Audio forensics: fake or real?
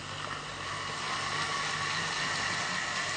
real